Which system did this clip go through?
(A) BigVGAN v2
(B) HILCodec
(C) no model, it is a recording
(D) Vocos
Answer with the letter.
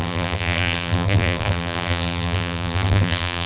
A